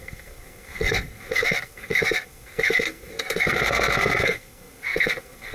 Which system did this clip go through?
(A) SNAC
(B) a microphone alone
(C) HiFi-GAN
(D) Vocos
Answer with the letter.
A